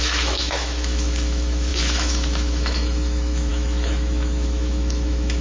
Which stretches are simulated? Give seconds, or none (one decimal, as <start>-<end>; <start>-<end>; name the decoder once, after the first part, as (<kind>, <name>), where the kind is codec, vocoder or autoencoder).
0.0-5.4 (autoencoder, DAC-VAE)